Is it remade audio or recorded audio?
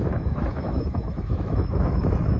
remade